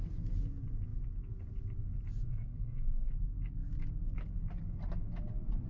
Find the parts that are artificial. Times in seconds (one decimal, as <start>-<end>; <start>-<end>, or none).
2.3-3.1

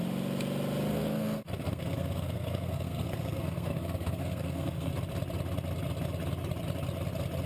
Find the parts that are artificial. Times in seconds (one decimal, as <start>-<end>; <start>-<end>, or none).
0.9-4.9

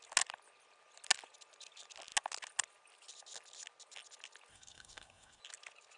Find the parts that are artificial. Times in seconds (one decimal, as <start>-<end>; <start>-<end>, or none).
4.5-5.4

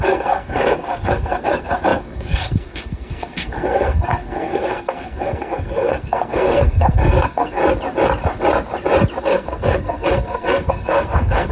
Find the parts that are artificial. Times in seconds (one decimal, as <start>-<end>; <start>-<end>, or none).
0.0-7.6; 9.2-11.5